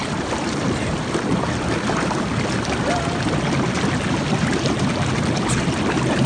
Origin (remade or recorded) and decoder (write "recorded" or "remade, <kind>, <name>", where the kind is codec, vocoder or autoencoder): recorded